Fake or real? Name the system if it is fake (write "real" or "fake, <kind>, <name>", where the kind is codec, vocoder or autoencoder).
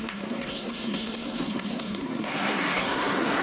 fake, codec, SNAC